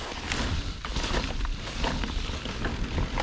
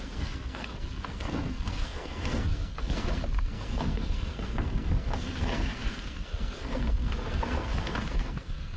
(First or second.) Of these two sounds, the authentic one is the first